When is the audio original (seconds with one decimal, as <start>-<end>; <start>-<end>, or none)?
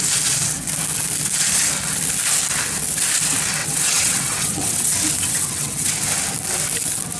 0.0-3.6; 5.9-7.2